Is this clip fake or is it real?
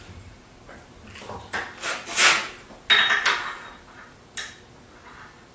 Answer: real